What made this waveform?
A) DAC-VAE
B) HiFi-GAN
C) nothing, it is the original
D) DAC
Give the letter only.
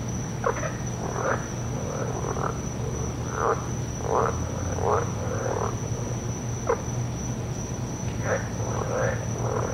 C